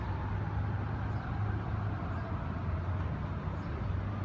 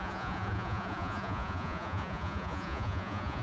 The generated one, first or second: second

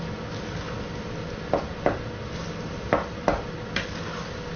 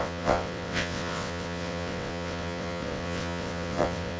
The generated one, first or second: second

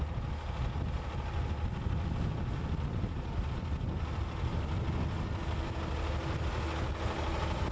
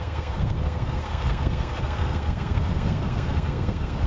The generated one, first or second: second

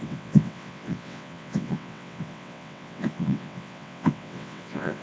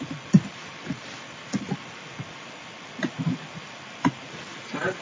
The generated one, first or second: first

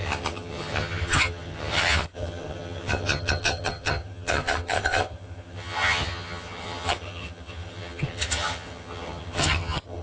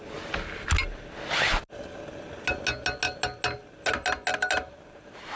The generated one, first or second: first